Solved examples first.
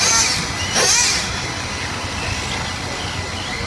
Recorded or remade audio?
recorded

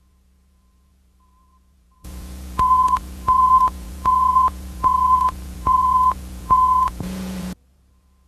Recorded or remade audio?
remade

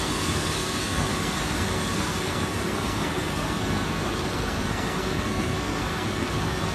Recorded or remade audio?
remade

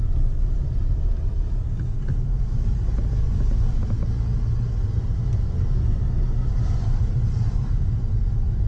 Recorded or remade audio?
recorded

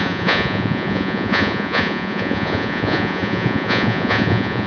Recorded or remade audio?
remade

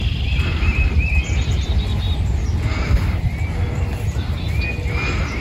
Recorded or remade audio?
recorded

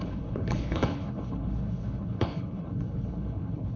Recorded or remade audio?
remade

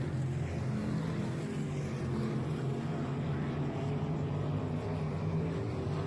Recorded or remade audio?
recorded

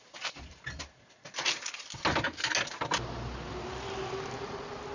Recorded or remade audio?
recorded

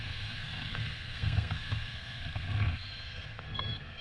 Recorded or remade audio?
remade